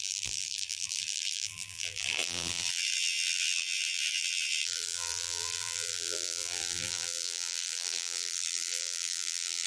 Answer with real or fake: fake